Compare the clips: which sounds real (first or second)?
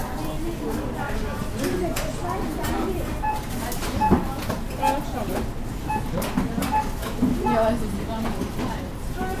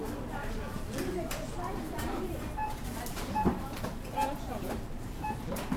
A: first